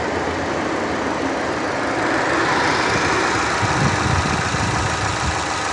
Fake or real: real